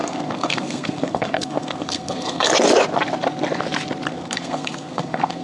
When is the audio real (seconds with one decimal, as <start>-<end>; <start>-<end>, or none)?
2.5-4.1

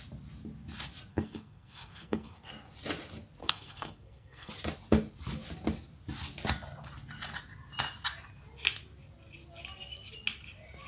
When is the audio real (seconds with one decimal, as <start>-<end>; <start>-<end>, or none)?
0.0-1.1; 2.5-3.4; 4.5-10.9

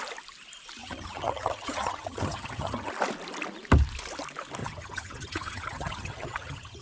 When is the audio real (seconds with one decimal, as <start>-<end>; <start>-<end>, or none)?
0.0-0.8; 2.9-4.6

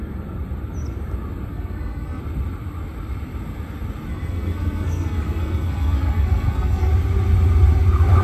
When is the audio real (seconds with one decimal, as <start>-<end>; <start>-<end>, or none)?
0.0-1.5; 2.2-4.1; 6.9-8.2

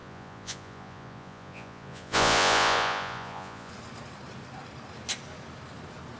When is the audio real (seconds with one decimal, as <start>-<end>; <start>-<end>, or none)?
3.7-6.2